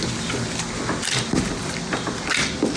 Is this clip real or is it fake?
real